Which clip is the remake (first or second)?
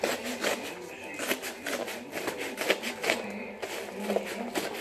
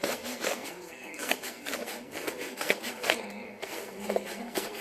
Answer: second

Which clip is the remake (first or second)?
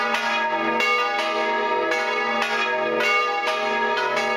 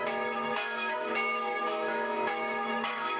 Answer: second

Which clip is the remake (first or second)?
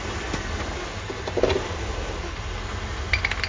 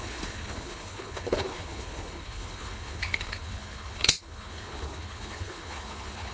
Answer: second